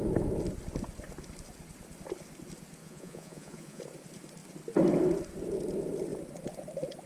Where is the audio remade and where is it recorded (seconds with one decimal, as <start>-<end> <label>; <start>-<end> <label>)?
0.0-2.8 recorded; 2.8-3.8 remade; 3.8-7.1 recorded